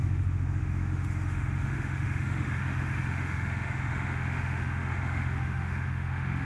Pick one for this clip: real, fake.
fake